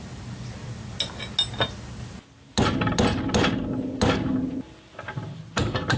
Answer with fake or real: real